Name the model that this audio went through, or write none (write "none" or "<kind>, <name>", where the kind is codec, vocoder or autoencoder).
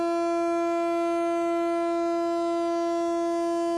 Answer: none